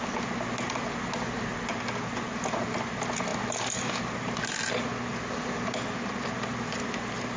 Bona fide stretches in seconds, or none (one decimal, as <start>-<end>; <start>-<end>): 0.0-7.4